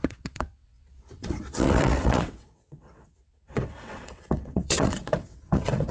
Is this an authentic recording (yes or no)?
no